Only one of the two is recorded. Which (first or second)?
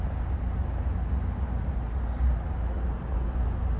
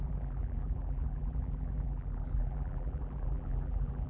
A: first